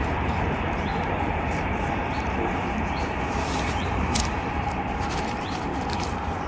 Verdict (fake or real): fake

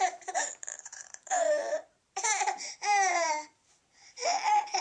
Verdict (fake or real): fake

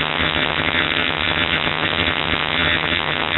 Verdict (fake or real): fake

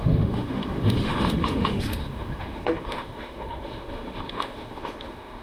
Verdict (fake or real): fake